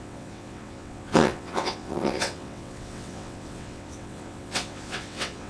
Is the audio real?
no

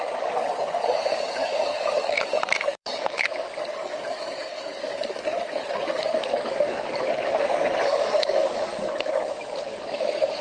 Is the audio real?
no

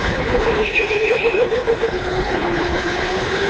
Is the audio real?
no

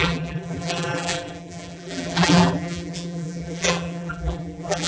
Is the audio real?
no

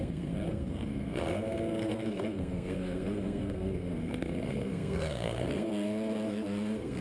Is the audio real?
no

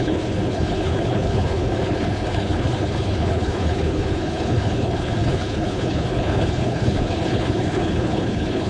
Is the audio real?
no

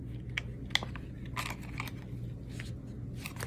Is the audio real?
yes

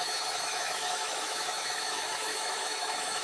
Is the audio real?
no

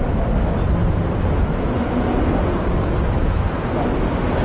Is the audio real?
yes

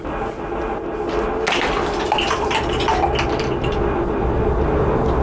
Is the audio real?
yes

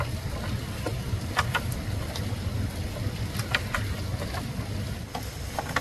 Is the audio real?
yes